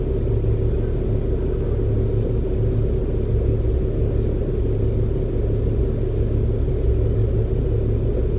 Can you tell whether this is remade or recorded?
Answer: recorded